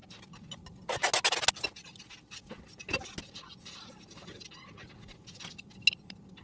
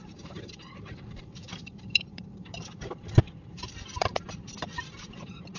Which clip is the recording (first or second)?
first